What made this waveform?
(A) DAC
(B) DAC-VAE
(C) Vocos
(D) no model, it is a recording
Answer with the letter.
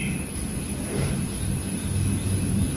D